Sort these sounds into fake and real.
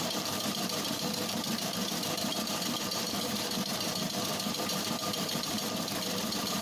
fake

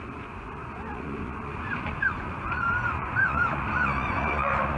fake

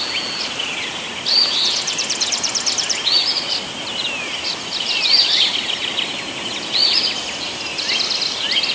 real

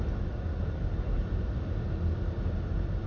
real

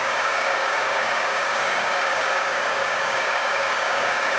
fake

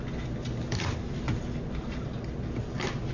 real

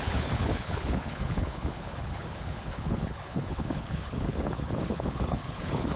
fake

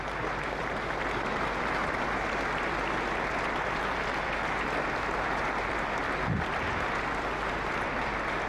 real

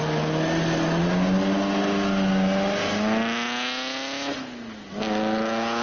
real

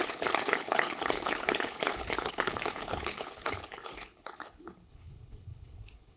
fake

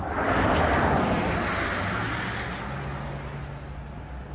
real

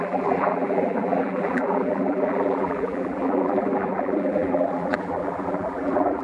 fake